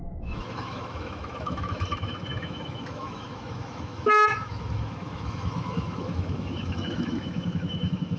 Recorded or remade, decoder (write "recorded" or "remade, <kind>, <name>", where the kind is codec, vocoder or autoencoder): remade, autoencoder, DAC-VAE